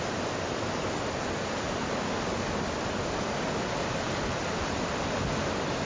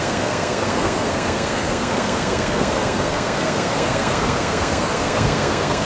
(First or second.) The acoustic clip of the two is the first